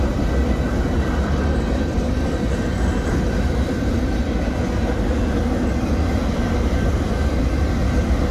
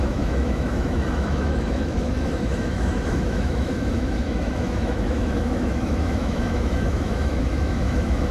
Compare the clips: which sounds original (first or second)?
first